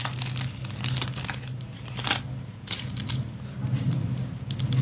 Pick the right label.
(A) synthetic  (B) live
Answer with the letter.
B